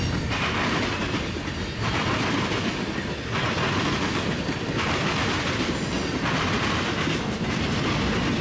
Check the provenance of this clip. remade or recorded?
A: recorded